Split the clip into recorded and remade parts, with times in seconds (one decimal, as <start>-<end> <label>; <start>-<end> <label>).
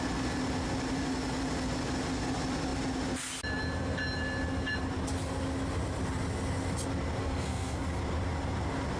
0.0-7.2 recorded; 7.2-7.8 remade; 7.8-9.0 recorded